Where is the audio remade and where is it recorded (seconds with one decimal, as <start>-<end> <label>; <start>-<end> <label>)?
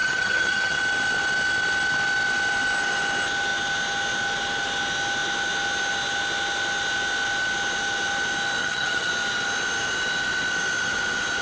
0.0-0.8 remade; 0.8-8.6 recorded; 8.6-9.1 remade; 9.1-11.4 recorded